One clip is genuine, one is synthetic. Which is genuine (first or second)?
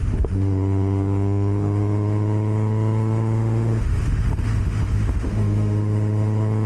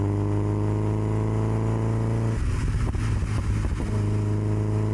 second